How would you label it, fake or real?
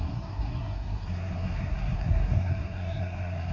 fake